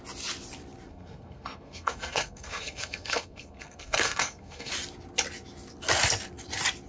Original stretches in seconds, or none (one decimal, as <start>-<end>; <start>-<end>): 0.0-0.9; 4.7-6.9